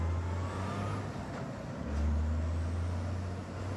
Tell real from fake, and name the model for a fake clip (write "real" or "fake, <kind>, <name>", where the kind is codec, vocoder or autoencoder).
real